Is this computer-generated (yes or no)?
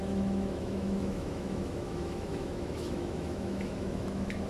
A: yes